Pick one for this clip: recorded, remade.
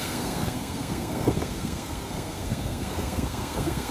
remade